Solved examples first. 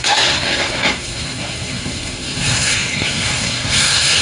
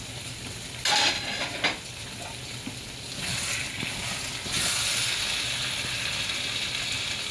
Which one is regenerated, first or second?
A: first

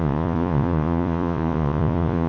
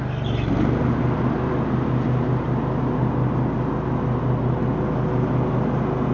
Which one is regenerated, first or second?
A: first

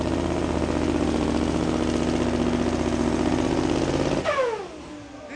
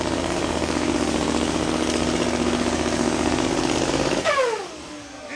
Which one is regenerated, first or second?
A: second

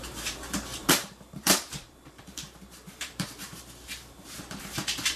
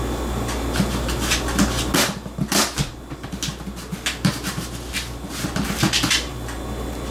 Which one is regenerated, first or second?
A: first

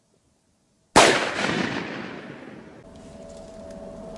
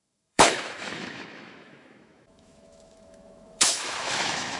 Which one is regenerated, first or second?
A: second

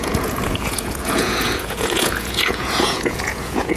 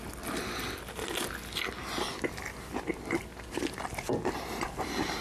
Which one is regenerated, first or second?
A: first